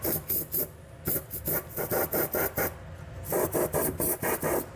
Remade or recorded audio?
recorded